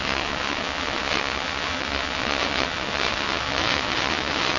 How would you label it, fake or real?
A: fake